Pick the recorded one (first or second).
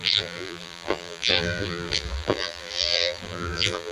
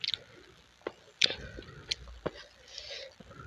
second